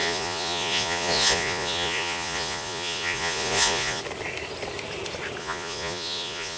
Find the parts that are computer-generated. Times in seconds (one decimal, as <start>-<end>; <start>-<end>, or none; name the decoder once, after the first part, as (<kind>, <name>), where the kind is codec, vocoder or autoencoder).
0.0-4.0 (vocoder, Vocos); 5.4-6.6